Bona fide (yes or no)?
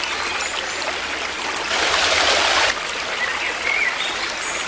yes